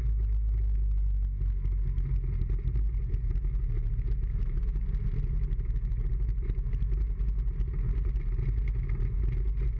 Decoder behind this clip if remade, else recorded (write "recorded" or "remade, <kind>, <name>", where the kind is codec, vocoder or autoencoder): recorded